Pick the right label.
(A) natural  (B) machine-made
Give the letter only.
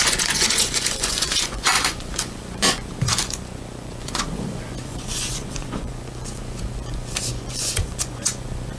B